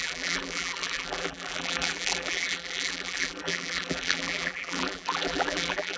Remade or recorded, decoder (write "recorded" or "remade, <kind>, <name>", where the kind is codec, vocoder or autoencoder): remade, vocoder, BigVGAN v2